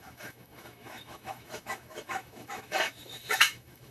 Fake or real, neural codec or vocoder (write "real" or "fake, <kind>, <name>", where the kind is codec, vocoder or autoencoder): fake, autoencoder, DAC-VAE